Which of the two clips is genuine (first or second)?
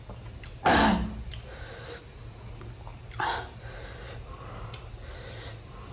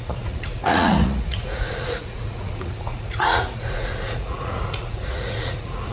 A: first